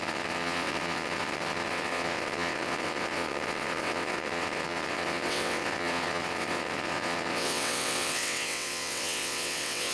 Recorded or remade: remade